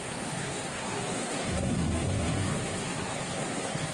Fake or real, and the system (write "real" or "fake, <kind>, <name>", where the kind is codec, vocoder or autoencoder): fake, codec, SNAC